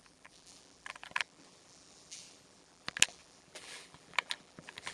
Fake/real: fake